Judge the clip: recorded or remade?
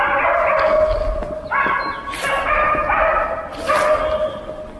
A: recorded